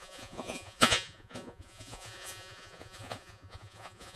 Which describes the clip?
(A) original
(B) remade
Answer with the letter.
B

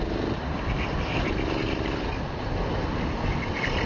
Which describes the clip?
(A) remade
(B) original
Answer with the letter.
B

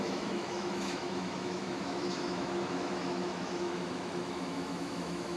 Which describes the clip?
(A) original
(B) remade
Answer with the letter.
B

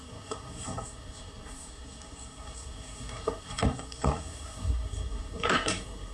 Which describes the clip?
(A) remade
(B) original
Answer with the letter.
A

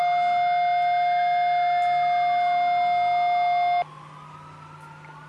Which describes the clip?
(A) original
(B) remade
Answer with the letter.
A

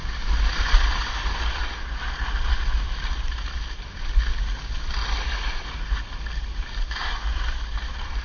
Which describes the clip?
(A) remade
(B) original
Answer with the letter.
B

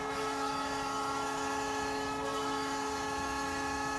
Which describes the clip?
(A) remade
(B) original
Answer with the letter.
A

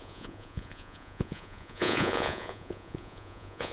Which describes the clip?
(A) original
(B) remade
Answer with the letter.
B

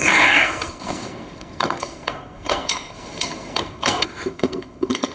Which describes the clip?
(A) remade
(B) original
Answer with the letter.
A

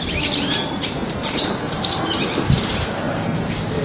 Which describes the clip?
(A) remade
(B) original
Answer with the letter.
A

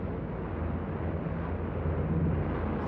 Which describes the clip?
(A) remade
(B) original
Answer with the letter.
B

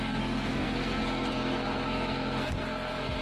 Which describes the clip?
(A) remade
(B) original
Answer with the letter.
A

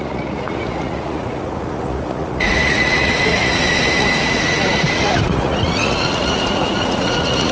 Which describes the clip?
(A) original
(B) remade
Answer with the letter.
B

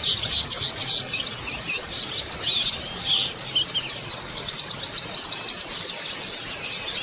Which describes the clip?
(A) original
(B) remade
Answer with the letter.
A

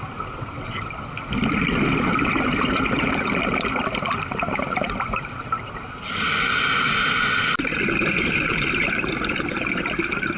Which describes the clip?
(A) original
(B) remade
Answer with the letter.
A